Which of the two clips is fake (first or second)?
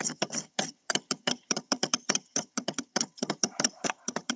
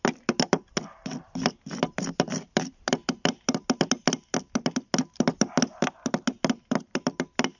first